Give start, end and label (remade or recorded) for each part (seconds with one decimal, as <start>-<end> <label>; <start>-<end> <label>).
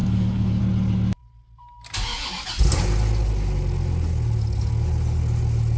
0.0-0.6 remade; 0.6-5.8 recorded